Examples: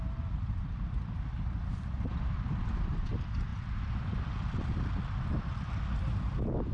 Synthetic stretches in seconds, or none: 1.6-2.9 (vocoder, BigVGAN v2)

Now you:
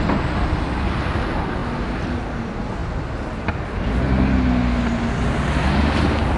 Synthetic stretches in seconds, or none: none

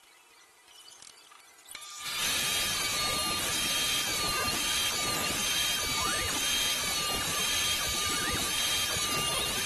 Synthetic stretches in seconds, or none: 4.1-4.9 (vocoder, BigVGAN v2); 7.3-8.7

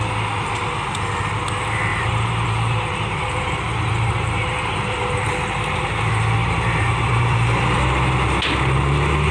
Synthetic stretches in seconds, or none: 1.9-5.2 (vocoder, BigVGAN v2); 6.4-7.8

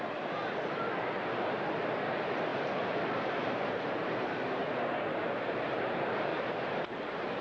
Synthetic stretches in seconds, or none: 0.0-4.6 (vocoder, BigVGAN v2); 5.2-6.3; 6.9-7.4

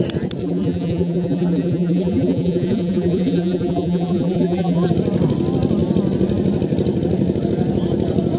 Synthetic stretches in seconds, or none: 0.4-4.9 (vocoder, BigVGAN v2)

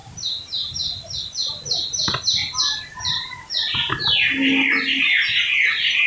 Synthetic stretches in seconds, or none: none

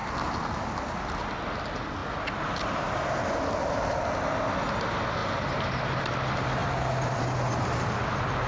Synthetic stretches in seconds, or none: 2.0-3.5 (vocoder, BigVGAN v2); 6.6-8.5